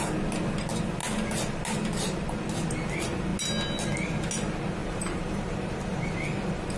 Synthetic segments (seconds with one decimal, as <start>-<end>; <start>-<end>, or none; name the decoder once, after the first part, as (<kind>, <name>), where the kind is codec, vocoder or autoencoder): 4.8-5.7 (vocoder, BigVGAN v2)